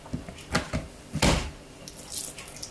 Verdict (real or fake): real